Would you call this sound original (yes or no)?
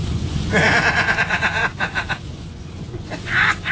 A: no